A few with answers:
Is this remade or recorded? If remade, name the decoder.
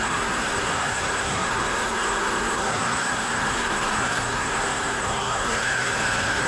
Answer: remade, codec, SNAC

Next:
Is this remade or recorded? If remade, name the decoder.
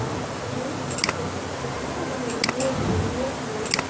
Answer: recorded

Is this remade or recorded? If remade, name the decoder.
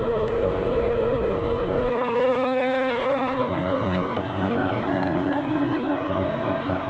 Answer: remade, codec, SNAC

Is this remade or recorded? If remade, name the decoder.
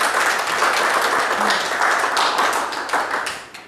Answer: recorded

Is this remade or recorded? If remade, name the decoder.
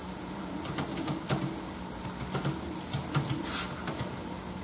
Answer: recorded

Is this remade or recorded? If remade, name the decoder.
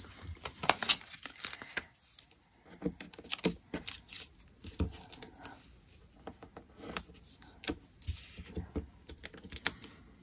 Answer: recorded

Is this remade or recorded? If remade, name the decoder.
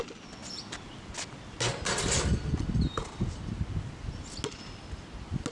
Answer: recorded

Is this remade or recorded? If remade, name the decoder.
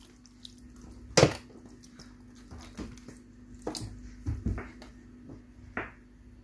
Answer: recorded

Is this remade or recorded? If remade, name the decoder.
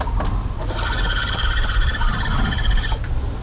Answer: recorded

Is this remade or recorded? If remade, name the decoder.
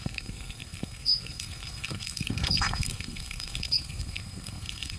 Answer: remade, codec, SNAC